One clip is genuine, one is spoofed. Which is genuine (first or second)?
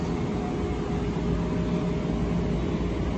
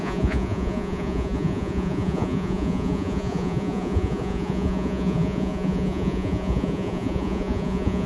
first